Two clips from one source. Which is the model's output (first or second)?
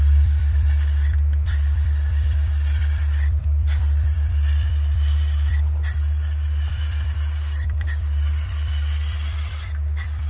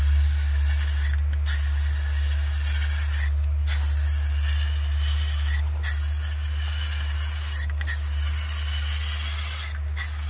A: first